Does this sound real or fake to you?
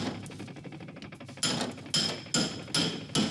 real